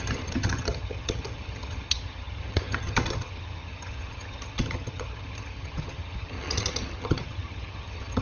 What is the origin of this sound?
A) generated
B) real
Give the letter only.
A